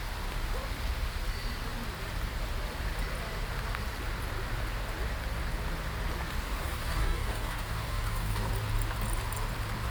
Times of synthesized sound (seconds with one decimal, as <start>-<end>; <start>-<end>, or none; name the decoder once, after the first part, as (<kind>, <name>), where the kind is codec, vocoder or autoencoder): 6.6-8.5 (codec, DAC)